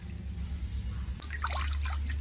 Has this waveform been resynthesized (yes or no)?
no